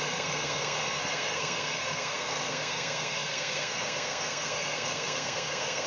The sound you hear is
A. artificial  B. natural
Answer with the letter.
A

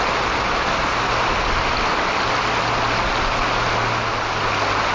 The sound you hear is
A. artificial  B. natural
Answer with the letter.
B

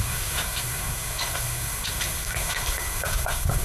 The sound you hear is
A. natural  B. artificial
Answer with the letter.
B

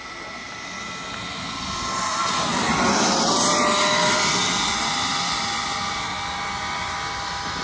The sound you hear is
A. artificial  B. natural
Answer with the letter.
B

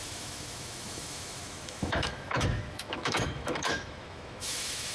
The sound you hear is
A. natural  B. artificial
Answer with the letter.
B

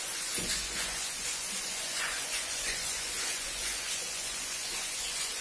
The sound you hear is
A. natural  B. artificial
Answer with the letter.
B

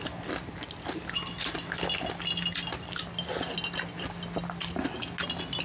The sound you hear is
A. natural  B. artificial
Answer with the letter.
A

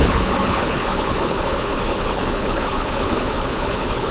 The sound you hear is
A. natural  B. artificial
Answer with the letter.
B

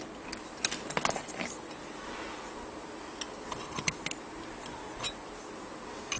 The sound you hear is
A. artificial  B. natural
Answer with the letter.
B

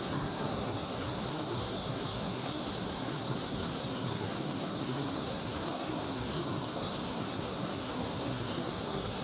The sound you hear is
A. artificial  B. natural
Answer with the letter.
A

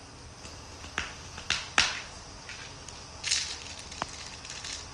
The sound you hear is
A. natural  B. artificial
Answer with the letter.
A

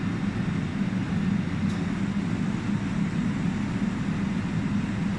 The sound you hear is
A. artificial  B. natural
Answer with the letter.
B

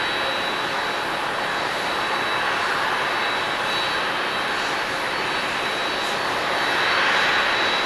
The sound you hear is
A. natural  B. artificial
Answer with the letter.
A